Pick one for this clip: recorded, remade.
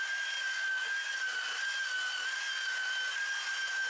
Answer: recorded